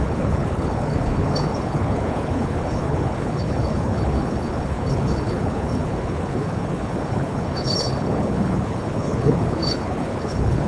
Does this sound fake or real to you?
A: fake